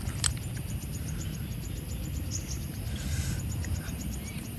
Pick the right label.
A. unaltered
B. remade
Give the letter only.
A